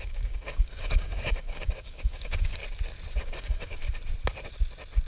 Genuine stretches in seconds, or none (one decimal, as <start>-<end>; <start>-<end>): 2.6-3.2; 3.8-5.1